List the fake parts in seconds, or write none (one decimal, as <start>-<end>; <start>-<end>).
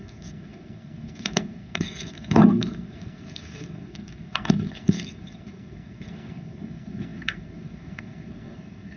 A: 0.0-9.0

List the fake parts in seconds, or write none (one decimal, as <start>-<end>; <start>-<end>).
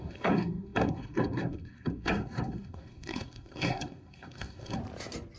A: 0.0-4.8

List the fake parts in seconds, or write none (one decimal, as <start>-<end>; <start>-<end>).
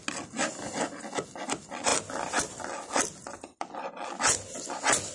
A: none